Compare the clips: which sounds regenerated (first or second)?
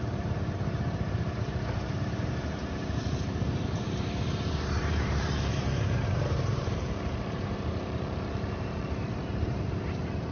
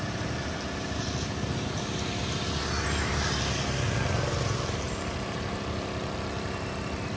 first